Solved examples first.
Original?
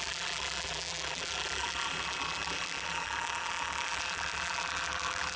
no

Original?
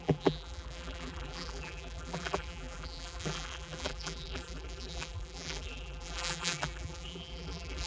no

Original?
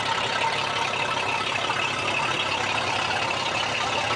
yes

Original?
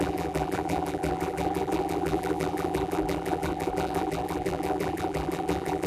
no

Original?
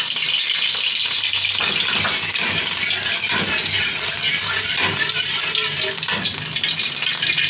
yes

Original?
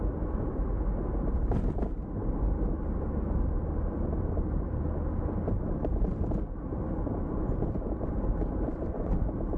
no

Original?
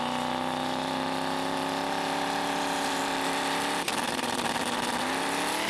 no